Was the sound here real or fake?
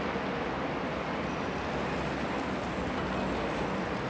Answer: real